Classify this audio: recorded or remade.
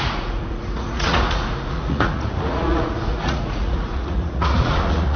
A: remade